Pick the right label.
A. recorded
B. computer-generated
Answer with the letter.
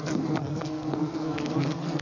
B